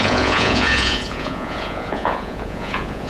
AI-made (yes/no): yes